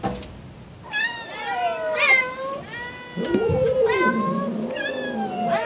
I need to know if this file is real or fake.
real